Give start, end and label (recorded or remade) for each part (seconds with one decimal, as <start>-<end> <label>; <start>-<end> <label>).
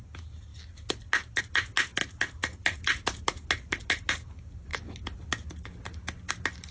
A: 0.0-6.7 recorded